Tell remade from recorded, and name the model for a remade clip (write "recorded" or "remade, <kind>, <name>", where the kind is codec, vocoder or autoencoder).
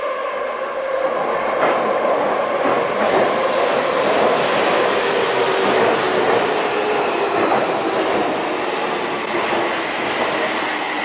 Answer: recorded